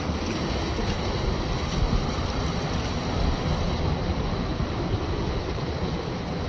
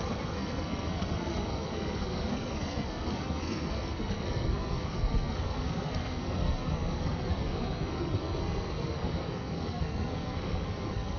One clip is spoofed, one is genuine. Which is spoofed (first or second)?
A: second